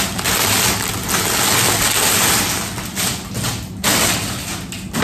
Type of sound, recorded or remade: recorded